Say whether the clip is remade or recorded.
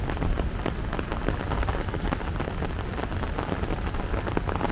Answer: recorded